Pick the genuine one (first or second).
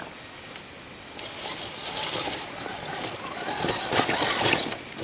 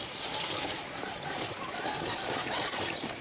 first